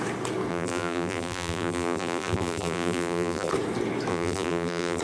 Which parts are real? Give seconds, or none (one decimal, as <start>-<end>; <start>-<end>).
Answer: 0.0-0.5; 3.5-4.1